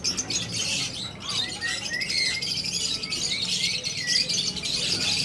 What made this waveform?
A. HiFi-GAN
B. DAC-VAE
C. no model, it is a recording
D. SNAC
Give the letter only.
C